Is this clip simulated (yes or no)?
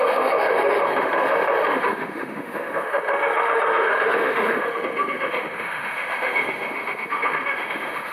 yes